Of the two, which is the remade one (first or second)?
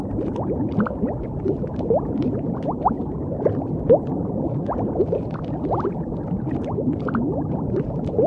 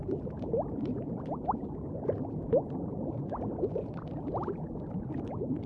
first